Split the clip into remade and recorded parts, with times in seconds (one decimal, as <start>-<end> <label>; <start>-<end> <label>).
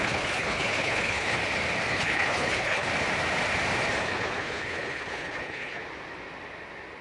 0.0-1.4 remade; 1.4-1.9 recorded; 1.9-2.9 remade; 2.9-4.0 recorded; 4.0-5.8 remade; 5.8-7.0 recorded